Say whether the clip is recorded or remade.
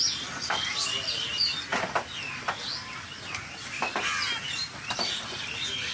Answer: recorded